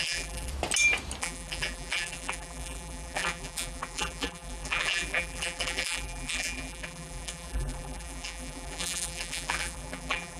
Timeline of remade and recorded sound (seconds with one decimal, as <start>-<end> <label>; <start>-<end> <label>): 0.0-0.5 remade; 0.5-1.2 recorded; 1.2-10.4 remade